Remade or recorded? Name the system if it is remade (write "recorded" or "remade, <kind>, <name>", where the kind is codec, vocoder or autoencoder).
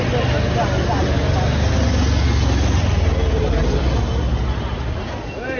recorded